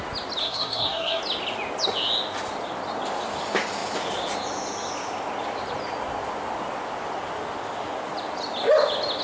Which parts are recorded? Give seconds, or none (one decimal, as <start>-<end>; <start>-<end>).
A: 0.0-0.4; 1.2-9.2